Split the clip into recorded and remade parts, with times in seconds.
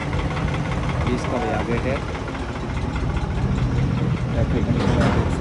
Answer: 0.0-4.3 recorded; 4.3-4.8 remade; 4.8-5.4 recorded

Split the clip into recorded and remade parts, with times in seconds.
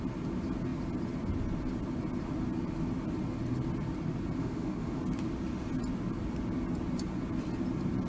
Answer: 0.0-4.4 recorded; 4.4-5.0 remade; 5.0-8.1 recorded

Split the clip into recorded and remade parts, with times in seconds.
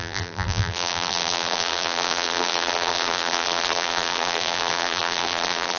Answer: 0.0-5.8 remade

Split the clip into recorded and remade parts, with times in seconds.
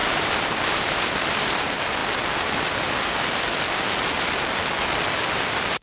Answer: 0.0-2.0 remade; 2.0-4.9 recorded; 4.9-5.8 remade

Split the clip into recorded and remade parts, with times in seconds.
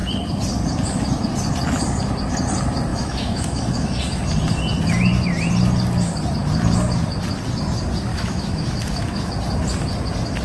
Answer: 0.0-2.9 recorded; 2.9-4.0 remade; 4.0-8.1 recorded; 8.1-9.3 remade; 9.3-10.4 recorded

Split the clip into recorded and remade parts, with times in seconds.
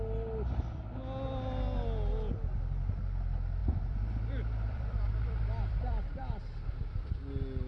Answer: 0.0-3.6 recorded; 3.6-6.8 remade; 6.8-7.7 recorded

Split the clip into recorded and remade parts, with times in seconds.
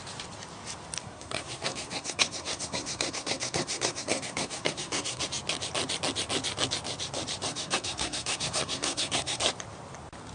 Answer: 0.0-1.0 recorded; 1.0-5.2 remade; 5.2-7.5 recorded; 7.5-9.4 remade; 9.4-10.3 recorded